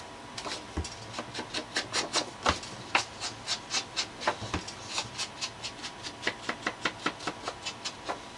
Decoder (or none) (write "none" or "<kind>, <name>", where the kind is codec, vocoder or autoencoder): none